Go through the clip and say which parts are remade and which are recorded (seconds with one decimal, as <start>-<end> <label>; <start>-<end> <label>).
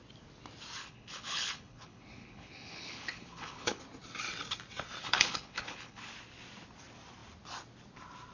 0.0-0.8 recorded; 0.8-3.8 remade; 3.8-5.0 recorded; 5.0-6.1 remade; 6.1-8.3 recorded